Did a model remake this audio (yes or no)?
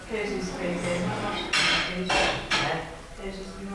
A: no